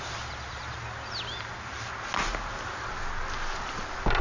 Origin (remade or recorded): recorded